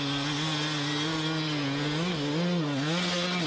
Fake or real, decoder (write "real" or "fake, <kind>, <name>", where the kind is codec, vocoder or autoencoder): real